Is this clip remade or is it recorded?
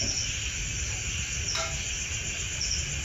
recorded